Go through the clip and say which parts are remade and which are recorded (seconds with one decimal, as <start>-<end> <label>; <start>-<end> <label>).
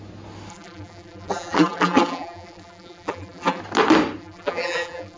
0.0-0.5 recorded; 0.5-3.6 remade; 3.6-4.2 recorded; 4.2-5.2 remade